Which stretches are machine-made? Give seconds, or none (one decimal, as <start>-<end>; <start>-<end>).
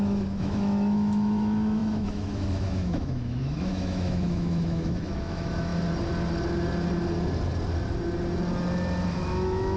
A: 0.0-5.7; 9.1-9.8